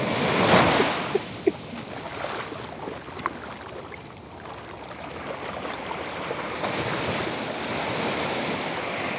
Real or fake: real